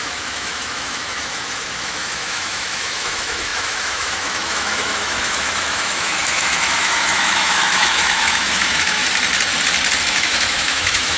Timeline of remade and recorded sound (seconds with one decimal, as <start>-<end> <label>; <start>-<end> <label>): 0.0-9.0 remade; 9.0-10.1 recorded; 10.1-11.2 remade